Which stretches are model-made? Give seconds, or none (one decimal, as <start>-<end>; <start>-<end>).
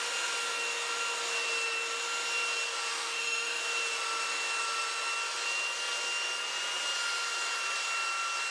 2.9-3.6